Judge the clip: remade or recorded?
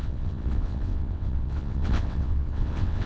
remade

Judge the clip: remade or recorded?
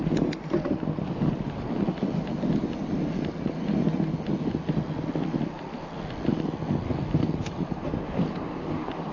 recorded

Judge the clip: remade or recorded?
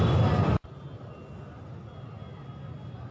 recorded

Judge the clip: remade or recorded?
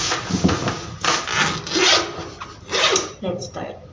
recorded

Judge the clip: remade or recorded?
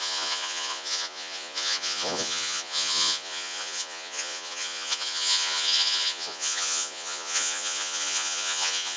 remade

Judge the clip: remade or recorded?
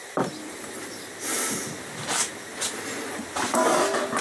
recorded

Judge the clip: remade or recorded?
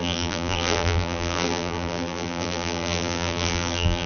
remade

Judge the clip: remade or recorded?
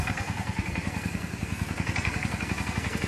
remade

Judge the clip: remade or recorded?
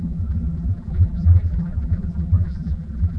remade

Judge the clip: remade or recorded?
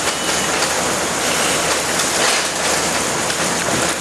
recorded